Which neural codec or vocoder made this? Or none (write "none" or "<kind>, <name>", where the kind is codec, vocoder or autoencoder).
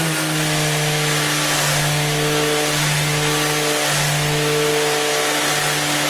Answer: none